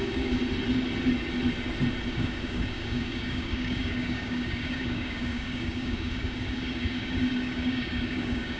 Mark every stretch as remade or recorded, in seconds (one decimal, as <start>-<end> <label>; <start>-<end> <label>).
0.0-0.4 remade; 0.4-2.1 recorded; 2.1-8.6 remade